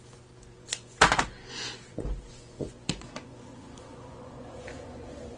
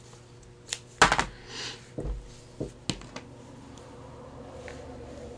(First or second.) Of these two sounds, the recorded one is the second